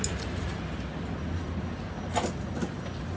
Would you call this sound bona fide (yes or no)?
yes